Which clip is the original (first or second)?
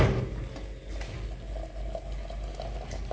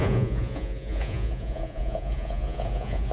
first